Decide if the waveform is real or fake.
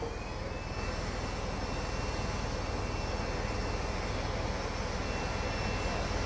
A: real